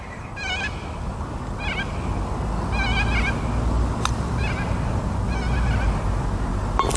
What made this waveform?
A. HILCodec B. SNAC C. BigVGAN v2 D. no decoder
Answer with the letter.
D